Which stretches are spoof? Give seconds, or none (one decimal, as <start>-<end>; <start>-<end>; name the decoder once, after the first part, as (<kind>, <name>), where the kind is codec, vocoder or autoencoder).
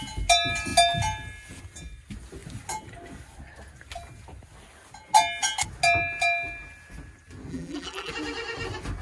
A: 7.5-8.1 (vocoder, BigVGAN v2)